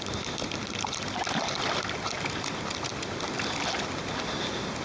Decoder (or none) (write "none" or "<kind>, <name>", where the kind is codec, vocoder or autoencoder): none